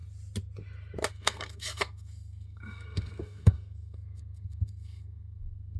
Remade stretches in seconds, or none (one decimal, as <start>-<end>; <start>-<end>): 1.1-5.8